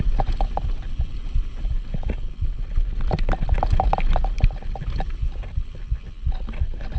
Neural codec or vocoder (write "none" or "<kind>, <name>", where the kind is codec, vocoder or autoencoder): none